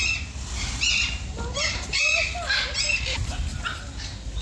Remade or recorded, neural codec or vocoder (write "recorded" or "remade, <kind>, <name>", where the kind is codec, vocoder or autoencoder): recorded